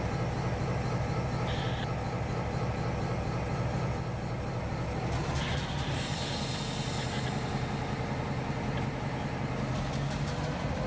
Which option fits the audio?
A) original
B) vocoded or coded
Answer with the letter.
A